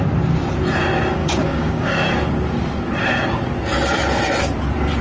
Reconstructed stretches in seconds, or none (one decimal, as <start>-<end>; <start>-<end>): 1.2-2.1